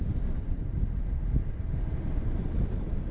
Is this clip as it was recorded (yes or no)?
yes